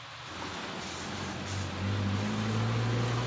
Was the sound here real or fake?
real